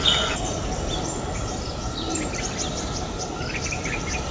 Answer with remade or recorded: recorded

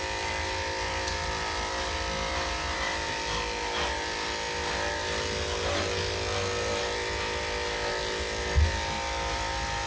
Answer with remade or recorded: recorded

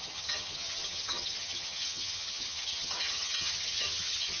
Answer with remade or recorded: remade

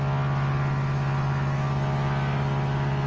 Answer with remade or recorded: recorded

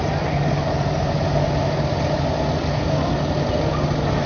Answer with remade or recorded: recorded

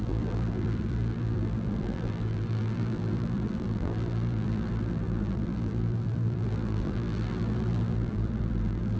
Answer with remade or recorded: remade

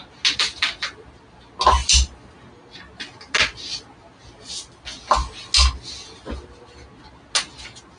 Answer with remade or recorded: recorded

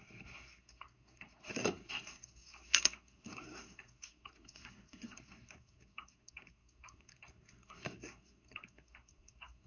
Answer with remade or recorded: remade